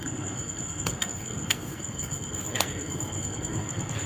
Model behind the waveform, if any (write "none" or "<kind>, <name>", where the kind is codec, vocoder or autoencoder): codec, SNAC